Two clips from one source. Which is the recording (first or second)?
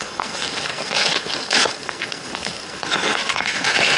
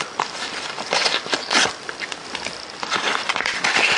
second